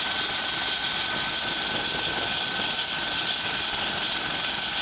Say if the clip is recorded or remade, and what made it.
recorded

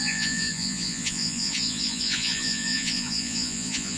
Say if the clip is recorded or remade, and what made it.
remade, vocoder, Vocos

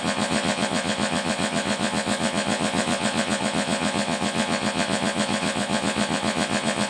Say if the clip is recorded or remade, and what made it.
remade, vocoder, Vocos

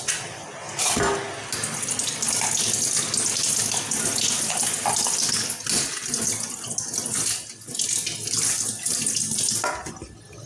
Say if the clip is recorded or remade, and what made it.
recorded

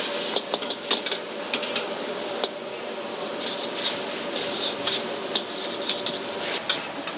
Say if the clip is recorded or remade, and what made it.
recorded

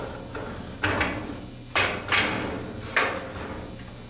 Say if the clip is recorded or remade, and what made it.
recorded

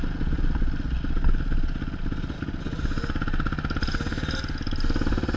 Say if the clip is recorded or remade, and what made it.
recorded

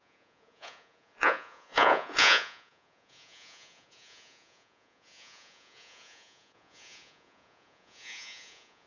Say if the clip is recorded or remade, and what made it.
remade, vocoder, Vocos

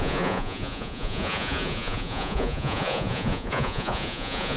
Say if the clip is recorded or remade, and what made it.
remade, vocoder, Vocos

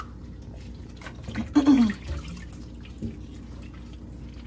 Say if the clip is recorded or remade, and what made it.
recorded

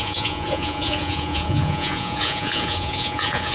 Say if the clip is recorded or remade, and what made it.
remade, vocoder, Vocos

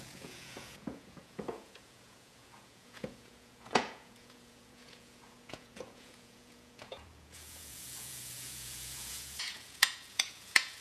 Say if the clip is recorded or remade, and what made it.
remade, vocoder, Vocos